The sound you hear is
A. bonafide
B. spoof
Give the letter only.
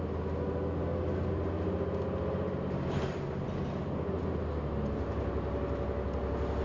A